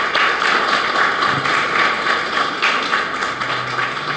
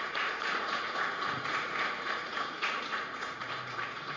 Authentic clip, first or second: first